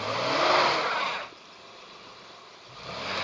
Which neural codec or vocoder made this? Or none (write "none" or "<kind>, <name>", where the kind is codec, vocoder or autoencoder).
none